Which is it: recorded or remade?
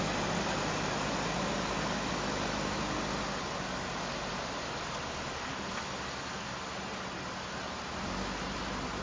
recorded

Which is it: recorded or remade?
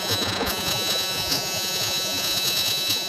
remade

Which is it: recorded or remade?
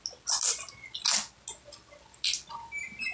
recorded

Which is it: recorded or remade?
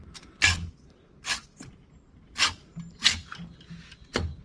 recorded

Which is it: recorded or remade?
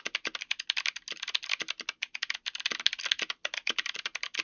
recorded